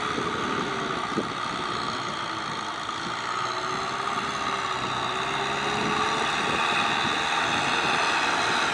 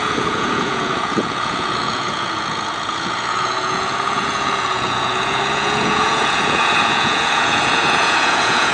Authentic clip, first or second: first